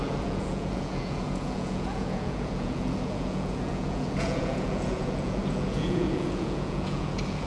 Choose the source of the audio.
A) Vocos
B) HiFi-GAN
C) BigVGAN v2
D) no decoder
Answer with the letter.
A